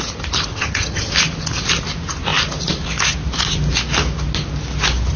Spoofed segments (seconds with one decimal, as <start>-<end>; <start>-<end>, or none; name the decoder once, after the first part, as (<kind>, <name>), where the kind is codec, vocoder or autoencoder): 0.5-1.1 (vocoder, HiFi-GAN)